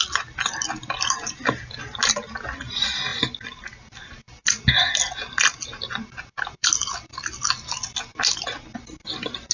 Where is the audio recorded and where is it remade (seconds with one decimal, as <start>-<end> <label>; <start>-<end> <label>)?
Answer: 0.0-9.5 recorded